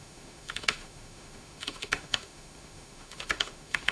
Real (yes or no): no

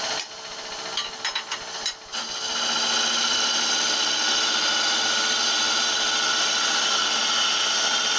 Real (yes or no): no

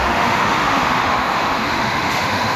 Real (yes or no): no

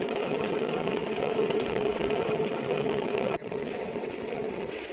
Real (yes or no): no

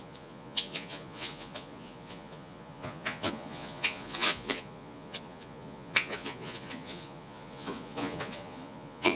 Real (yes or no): no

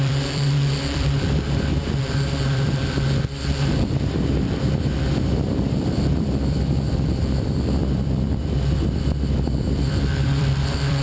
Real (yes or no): no